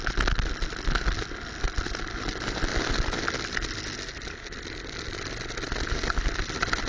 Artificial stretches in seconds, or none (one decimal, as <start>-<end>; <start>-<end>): none